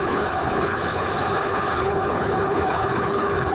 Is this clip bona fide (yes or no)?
no